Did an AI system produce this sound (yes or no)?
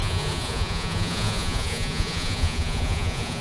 yes